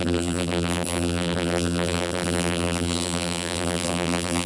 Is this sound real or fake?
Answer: fake